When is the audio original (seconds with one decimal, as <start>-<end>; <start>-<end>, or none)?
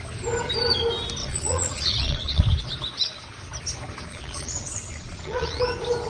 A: 0.0-1.2; 2.4-4.1; 5.6-6.1